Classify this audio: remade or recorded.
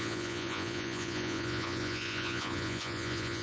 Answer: remade